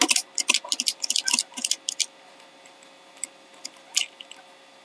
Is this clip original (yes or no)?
yes